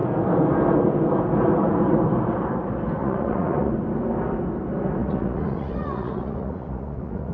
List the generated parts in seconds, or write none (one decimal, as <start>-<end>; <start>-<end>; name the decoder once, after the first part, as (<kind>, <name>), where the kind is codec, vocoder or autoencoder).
3.0-3.7 (vocoder, Vocos); 5.0-7.3